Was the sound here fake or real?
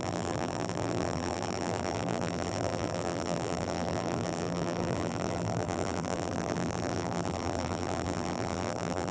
fake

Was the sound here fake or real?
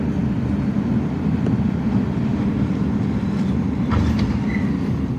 real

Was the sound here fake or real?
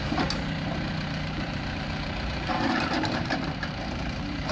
fake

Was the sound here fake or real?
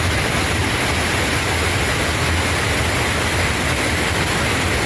real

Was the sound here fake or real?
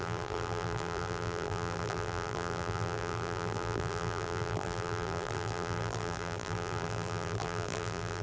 fake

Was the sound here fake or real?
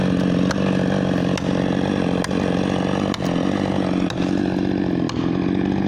real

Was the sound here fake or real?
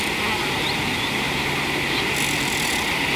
fake